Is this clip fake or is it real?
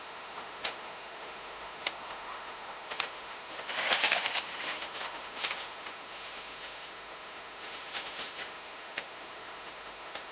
fake